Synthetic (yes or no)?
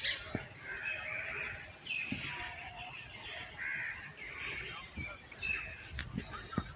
no